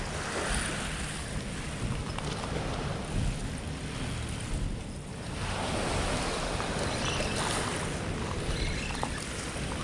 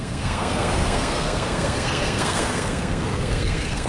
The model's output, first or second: second